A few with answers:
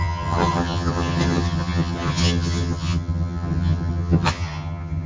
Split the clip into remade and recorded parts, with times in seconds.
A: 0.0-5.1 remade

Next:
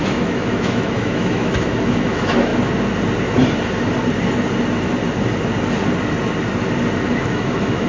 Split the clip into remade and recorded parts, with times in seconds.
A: 0.0-2.5 remade; 2.5-7.2 recorded; 7.2-7.9 remade

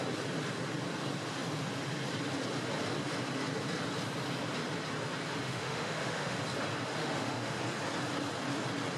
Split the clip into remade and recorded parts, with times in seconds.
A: 0.0-5.5 recorded; 5.5-6.4 remade; 6.4-7.0 recorded; 7.0-7.6 remade; 7.6-9.0 recorded

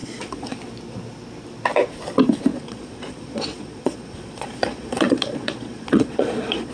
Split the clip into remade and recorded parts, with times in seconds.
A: 0.0-0.6 remade; 0.6-2.5 recorded; 2.5-6.7 remade